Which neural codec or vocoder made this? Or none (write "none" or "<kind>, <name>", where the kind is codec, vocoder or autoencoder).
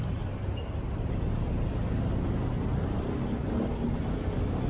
none